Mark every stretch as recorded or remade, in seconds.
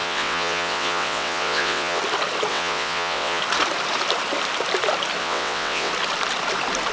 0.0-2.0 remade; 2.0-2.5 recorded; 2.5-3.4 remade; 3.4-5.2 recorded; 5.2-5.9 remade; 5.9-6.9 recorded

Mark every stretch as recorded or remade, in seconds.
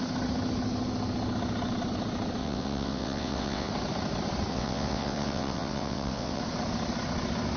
0.0-2.4 recorded; 2.4-3.7 remade; 3.7-4.5 recorded; 4.5-6.4 remade; 6.4-7.6 recorded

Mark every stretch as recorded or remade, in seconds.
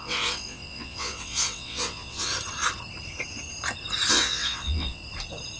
0.0-2.3 remade; 2.3-4.1 recorded; 4.1-5.0 remade; 5.0-5.6 recorded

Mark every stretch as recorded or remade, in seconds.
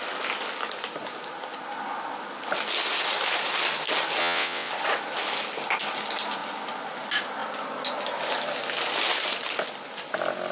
0.0-4.2 recorded; 4.2-4.7 remade; 4.7-10.5 recorded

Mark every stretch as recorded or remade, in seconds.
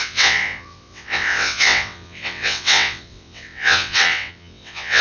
0.0-5.0 remade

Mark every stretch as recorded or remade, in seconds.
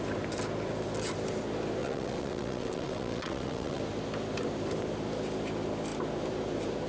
0.0-1.8 recorded; 1.8-3.8 remade; 3.8-6.9 recorded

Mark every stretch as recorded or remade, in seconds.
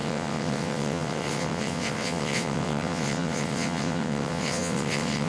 0.0-5.3 remade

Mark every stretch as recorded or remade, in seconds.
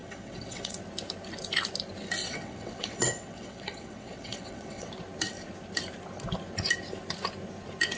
0.0-0.8 remade; 0.8-2.2 recorded; 2.2-4.9 remade; 4.9-8.0 recorded